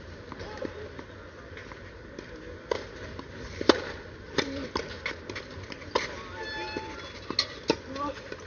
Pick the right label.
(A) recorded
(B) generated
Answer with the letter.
A